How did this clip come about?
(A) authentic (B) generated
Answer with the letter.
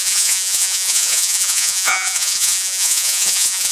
B